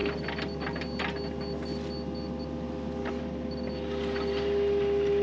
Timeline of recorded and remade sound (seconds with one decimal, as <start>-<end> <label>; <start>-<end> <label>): 0.0-5.2 recorded